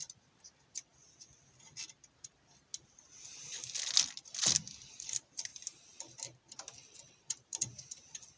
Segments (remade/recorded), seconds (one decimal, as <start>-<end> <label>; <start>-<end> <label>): 0.0-8.4 recorded